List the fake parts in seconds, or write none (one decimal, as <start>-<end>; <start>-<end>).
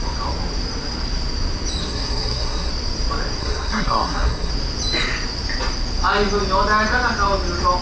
1.8-2.7; 3.4-4.5